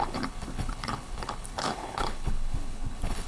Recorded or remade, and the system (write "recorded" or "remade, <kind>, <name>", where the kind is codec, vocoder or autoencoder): remade, codec, HILCodec